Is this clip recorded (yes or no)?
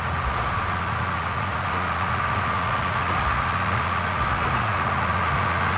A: no